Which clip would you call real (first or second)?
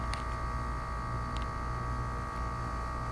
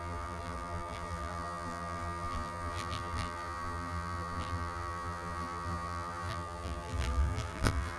first